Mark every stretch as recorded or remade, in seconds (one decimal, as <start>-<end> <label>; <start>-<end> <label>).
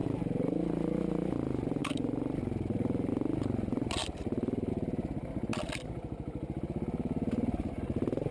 0.0-1.8 recorded; 1.8-3.1 remade; 3.1-8.3 recorded